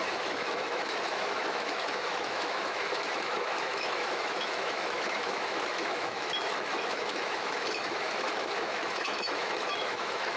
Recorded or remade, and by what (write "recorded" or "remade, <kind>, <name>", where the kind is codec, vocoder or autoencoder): remade, autoencoder, DAC-VAE